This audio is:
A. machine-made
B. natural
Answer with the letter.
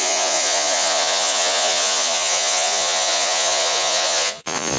A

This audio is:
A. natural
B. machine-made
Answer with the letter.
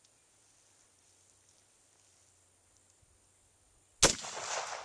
A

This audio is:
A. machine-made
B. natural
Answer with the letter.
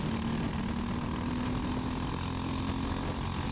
B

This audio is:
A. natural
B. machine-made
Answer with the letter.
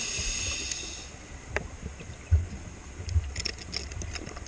A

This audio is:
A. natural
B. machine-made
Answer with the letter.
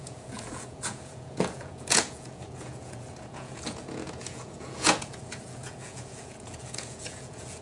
B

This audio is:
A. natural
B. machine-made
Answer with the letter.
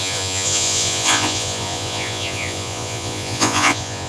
B